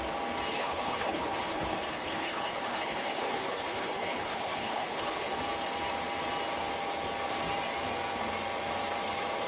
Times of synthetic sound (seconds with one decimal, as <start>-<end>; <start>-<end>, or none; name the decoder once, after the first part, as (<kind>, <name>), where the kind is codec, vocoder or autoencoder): 0.5-5.4 (codec, HILCodec)